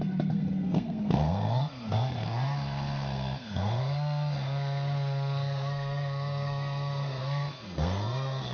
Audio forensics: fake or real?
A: fake